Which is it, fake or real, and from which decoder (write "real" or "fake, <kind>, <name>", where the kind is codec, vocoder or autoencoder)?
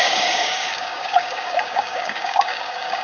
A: fake, codec, DAC